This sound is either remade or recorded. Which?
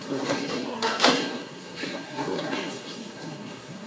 remade